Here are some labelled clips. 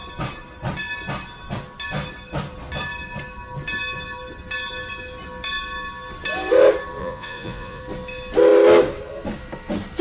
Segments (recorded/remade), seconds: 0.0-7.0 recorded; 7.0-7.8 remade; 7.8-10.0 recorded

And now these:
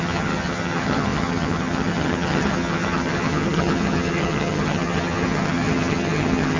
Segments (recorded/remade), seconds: 0.0-6.6 remade

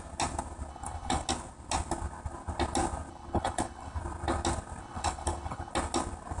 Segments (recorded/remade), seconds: 0.0-0.7 recorded; 0.7-1.3 remade; 1.3-3.1 recorded; 3.1-4.0 remade; 4.0-4.8 recorded; 4.8-5.7 remade; 5.7-6.4 recorded